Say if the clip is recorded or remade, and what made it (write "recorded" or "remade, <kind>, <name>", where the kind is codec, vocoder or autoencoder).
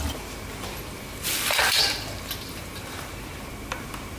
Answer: recorded